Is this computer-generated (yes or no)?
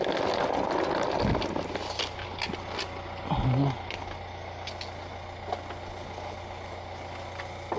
no